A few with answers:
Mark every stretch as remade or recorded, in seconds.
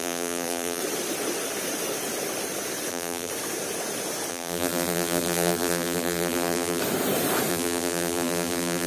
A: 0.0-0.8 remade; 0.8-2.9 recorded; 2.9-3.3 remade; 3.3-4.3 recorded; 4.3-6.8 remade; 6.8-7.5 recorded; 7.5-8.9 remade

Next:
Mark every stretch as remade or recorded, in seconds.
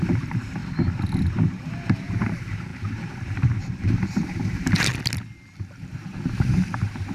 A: 0.0-0.6 remade; 0.6-1.3 recorded; 1.3-4.9 remade; 4.9-5.8 recorded; 5.8-7.1 remade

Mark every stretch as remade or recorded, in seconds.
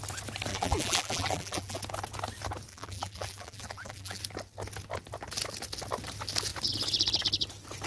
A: 0.0-0.5 recorded; 0.5-1.8 remade; 1.8-2.7 recorded; 2.7-4.2 remade; 4.2-7.9 recorded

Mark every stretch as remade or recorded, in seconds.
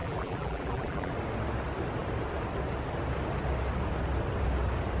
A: 0.0-1.1 remade; 1.1-5.0 recorded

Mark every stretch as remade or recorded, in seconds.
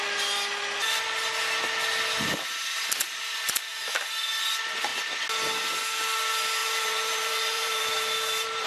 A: 0.0-6.6 recorded; 6.6-8.7 remade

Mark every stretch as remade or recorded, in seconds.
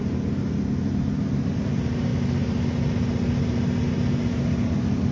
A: 0.0-5.1 recorded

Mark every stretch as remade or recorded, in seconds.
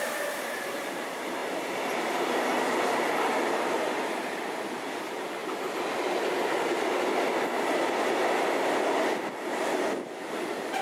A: 0.0-5.4 remade; 5.4-9.3 recorded; 9.3-10.8 remade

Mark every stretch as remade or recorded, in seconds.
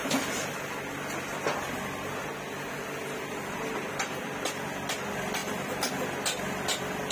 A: 0.0-5.4 recorded; 5.4-5.9 remade; 5.9-7.1 recorded